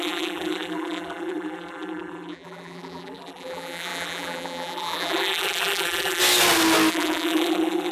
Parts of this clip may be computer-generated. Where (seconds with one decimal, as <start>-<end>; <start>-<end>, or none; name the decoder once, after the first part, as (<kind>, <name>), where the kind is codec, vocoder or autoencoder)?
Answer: 0.0-6.2 (vocoder, BigVGAN v2); 6.9-7.9